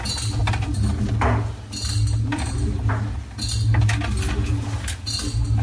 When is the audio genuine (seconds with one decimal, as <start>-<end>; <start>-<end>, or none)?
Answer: 0.0-0.4; 0.9-5.6